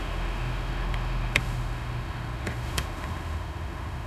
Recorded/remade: remade